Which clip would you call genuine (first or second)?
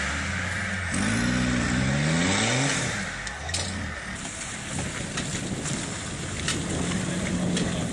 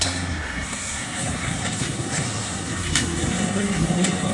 first